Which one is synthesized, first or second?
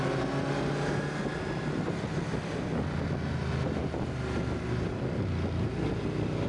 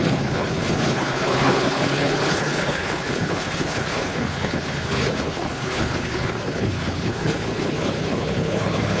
second